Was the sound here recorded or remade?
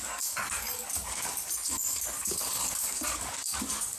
remade